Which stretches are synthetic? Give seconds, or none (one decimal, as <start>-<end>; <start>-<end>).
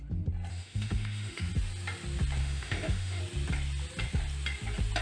0.5-1.5; 2.4-3.2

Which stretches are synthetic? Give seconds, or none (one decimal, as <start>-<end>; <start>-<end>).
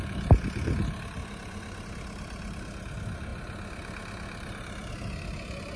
1.2-1.9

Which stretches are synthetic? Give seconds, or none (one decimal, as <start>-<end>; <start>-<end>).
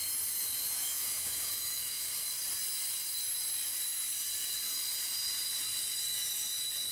0.6-2.1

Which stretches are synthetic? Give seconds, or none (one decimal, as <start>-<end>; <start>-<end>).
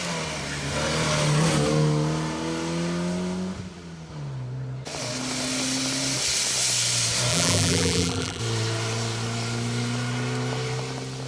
7.3-8.4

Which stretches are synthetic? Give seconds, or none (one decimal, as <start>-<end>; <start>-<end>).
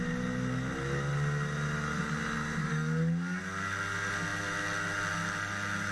2.6-3.4